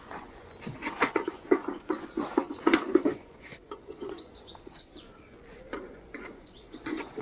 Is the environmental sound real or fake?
fake